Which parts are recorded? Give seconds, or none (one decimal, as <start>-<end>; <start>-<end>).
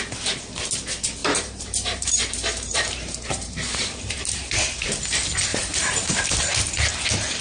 0.0-1.2; 4.0-5.5; 6.1-7.4